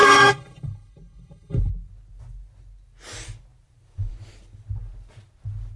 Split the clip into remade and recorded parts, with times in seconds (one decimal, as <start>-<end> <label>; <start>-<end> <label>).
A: 0.0-1.7 remade; 1.7-5.8 recorded

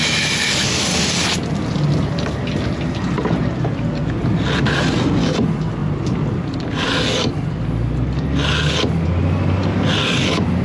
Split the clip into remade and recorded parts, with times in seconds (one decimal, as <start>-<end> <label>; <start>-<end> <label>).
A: 0.0-10.6 recorded

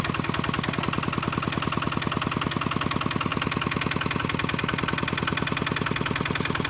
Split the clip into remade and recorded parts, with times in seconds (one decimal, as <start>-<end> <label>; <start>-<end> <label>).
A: 0.0-6.7 recorded

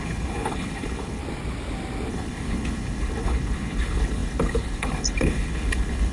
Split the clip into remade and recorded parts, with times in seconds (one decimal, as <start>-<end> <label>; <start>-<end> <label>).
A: 0.0-1.2 remade; 1.2-2.1 recorded; 2.1-6.1 remade